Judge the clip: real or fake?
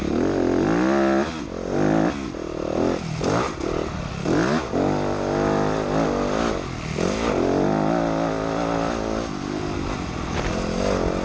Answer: real